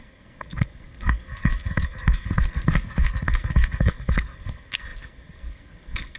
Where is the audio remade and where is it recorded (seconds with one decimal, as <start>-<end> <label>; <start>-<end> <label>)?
0.0-6.2 remade